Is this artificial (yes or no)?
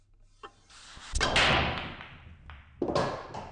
no